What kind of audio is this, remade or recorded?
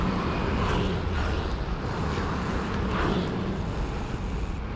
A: recorded